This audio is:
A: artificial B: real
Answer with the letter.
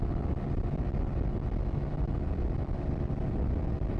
B